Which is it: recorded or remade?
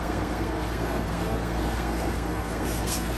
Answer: remade